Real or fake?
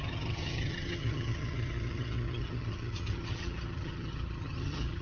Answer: fake